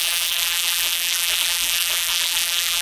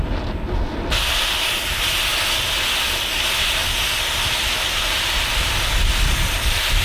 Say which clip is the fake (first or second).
first